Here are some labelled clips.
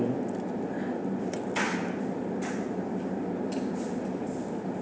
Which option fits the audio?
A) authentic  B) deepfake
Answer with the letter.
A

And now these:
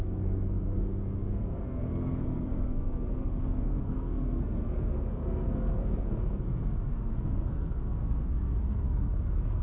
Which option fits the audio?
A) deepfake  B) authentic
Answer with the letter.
A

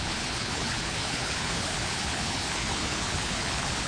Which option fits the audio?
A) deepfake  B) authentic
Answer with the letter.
A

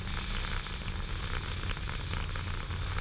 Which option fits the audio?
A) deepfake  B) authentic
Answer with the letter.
B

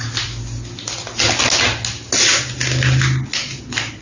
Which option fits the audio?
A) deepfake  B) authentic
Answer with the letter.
B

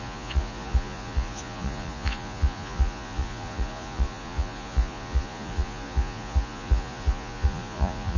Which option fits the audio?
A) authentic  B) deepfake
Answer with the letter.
B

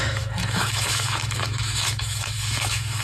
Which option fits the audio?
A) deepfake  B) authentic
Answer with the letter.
A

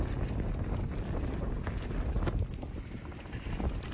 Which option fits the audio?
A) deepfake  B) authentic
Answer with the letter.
B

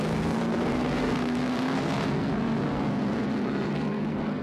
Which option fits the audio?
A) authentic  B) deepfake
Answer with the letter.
B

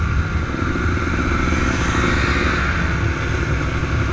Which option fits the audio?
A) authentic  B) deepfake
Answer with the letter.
A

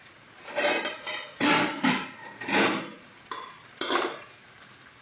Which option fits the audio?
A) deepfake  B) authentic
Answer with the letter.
A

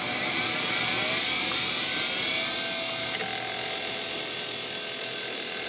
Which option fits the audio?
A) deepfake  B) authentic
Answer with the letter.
B